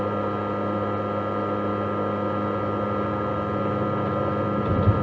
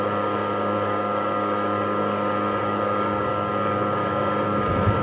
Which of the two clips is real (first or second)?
first